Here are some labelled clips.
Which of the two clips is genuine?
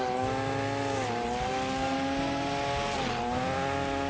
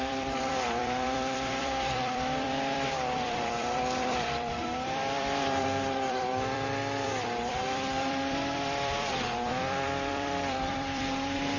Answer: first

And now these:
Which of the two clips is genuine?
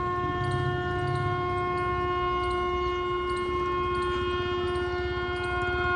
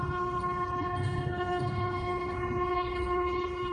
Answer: first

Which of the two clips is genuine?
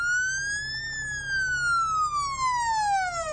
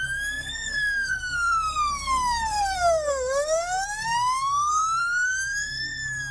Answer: first